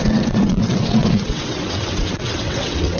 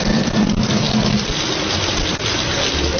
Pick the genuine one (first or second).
second